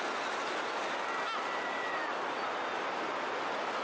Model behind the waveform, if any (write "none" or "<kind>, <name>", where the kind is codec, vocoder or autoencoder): none